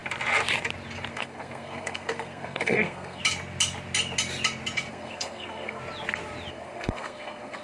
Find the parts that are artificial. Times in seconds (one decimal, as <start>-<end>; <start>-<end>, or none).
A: 1.1-3.2; 4.9-5.8; 6.5-7.6